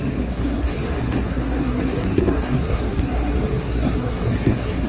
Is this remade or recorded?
remade